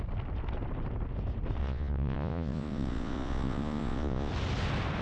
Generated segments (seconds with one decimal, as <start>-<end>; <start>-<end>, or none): 1.6-4.3